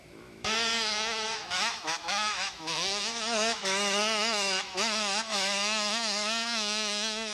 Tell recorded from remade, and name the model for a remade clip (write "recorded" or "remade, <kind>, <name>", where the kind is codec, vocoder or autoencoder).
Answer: remade, autoencoder, DAC-VAE